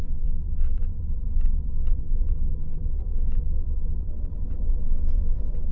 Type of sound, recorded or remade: remade